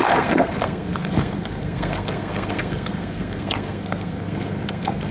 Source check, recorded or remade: remade